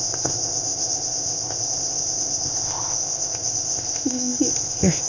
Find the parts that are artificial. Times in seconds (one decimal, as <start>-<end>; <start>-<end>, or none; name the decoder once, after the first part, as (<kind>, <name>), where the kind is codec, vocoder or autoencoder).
0.0-5.1 (codec, ZipCodec)